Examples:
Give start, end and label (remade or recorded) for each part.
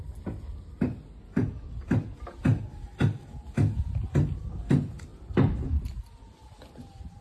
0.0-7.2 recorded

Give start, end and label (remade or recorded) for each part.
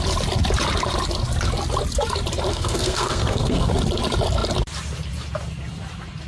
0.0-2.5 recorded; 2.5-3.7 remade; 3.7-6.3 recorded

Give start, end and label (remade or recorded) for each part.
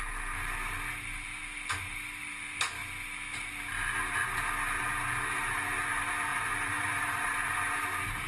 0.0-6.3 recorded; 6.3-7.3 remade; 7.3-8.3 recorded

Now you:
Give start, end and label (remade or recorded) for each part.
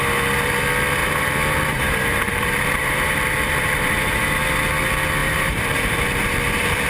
0.0-1.0 recorded; 1.0-4.2 remade; 4.2-5.2 recorded; 5.2-6.4 remade; 6.4-6.9 recorded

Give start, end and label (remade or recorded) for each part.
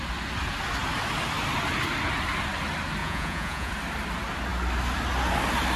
0.0-3.0 recorded; 3.0-3.7 remade; 3.7-5.8 recorded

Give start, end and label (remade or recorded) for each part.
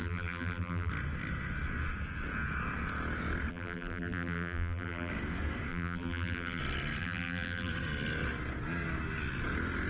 0.0-0.9 remade; 0.9-3.5 recorded; 3.5-5.1 remade; 5.1-5.7 recorded; 5.7-6.6 remade; 6.6-7.0 recorded; 7.0-7.7 remade; 7.7-9.9 recorded